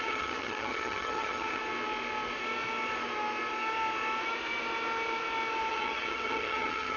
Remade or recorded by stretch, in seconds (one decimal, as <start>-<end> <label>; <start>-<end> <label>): 0.0-1.6 remade; 1.6-5.7 recorded; 5.7-7.0 remade